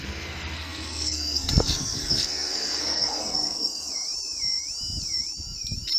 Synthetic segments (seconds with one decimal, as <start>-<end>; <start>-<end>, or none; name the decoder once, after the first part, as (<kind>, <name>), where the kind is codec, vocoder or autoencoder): 0.0-3.9 (codec, SNAC)